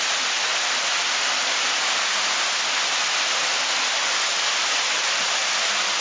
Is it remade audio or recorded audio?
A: recorded